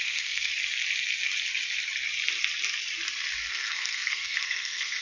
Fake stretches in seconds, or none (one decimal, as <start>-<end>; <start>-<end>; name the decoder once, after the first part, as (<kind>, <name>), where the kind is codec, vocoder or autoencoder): 0.0-0.5 (codec, SNAC); 3.5-5.0